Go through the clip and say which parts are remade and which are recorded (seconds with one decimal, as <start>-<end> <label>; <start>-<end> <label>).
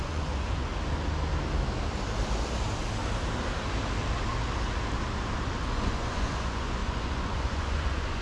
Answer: 0.0-0.7 remade; 0.7-5.6 recorded; 5.6-8.2 remade